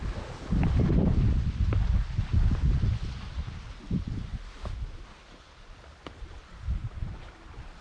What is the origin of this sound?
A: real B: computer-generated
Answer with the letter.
A